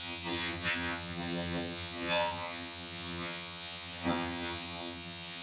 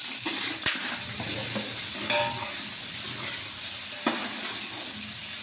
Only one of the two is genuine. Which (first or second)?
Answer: second